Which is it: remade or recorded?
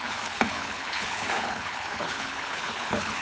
remade